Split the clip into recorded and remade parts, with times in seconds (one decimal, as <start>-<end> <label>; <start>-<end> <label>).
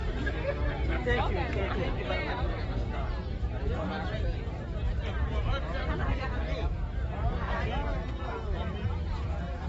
0.0-1.0 recorded; 1.0-3.0 remade; 3.0-5.5 recorded; 5.5-6.4 remade; 6.4-9.7 recorded